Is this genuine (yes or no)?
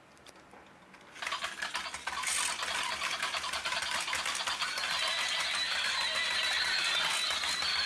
yes